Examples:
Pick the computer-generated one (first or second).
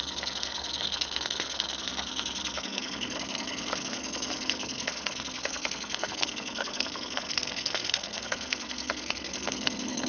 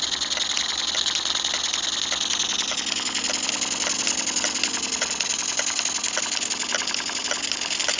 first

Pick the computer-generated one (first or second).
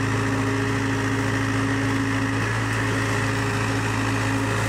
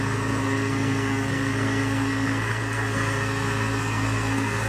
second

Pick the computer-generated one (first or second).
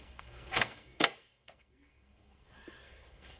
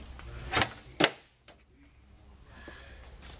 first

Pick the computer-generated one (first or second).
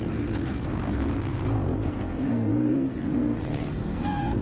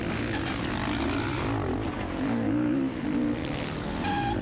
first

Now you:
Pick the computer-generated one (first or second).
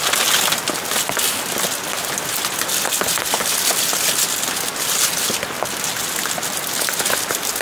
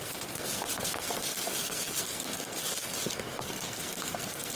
second